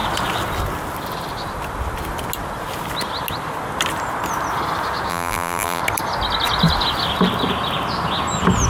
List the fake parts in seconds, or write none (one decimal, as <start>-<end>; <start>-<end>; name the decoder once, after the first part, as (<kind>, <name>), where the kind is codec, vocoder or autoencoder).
5.1-5.8 (vocoder, BigVGAN v2)